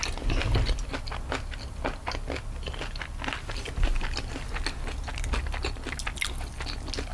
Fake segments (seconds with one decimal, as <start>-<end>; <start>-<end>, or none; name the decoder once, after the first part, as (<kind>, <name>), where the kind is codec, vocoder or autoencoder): none